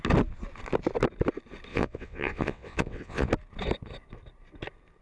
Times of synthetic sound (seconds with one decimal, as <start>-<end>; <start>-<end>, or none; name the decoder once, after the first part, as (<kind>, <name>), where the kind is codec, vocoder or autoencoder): 1.7-3.3 (vocoder, WaveNeXt)